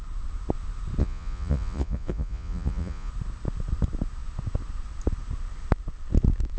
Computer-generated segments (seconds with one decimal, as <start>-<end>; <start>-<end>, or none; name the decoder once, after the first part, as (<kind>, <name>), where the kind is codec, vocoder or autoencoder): 1.0-3.1 (vocoder, Vocos)